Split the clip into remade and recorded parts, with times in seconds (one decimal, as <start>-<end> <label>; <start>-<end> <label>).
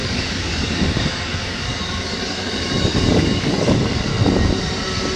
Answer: 0.0-4.1 remade; 4.1-5.2 recorded